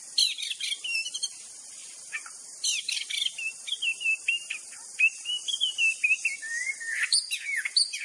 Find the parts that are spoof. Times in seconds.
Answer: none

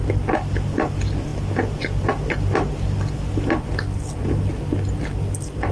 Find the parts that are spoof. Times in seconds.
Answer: none

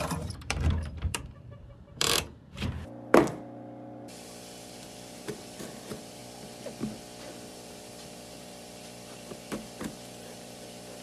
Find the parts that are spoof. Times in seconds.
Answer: 0.0-6.2 (vocoder, BigVGAN v2); 7.5-11.0

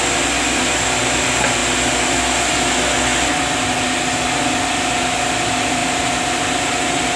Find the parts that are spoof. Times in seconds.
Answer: none

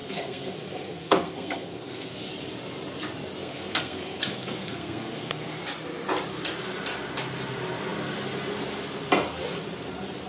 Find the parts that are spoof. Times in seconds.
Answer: 0.0-2.3 (codec, SNAC); 3.4-5.6